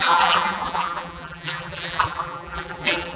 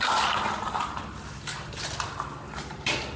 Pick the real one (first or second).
second